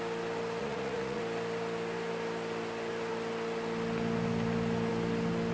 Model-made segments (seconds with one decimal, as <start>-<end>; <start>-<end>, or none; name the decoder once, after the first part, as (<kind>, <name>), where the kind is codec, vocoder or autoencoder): 0.6-1.2 (vocoder, Vocos)